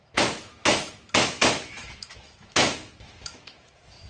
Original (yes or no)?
no